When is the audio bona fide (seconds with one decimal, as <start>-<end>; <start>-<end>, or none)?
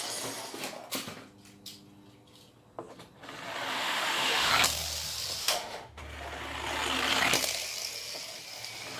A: 0.0-3.7; 4.5-5.4; 6.0-9.0